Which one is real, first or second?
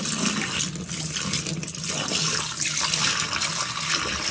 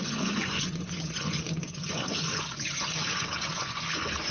first